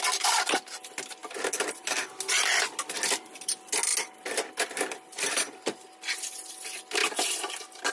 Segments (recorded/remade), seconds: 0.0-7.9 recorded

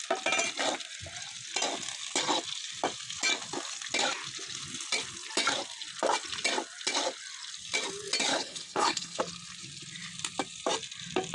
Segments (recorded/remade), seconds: 0.0-8.3 recorded; 8.3-9.2 remade; 9.2-11.3 recorded

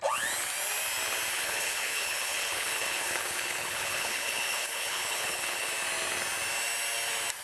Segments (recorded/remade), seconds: 0.0-1.3 recorded; 1.3-5.7 remade; 5.7-7.4 recorded

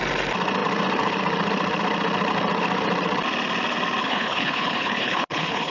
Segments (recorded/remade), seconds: 0.0-4.0 recorded; 4.0-5.7 remade

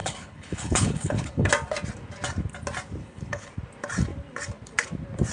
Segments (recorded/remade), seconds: 0.0-1.5 remade; 1.5-3.0 recorded; 3.0-3.5 remade; 3.5-5.3 recorded

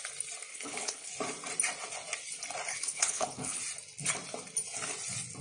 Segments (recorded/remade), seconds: 0.0-0.5 recorded; 0.5-1.1 remade; 1.1-2.7 recorded; 2.7-3.6 remade; 3.6-5.4 recorded

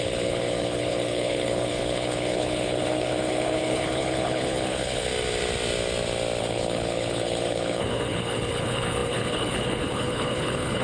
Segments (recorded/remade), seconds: 0.0-5.1 remade; 5.1-6.4 recorded; 6.4-10.8 remade